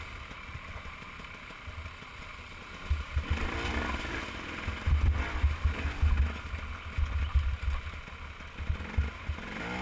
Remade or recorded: recorded